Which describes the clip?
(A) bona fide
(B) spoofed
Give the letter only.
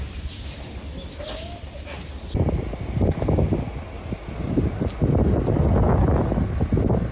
A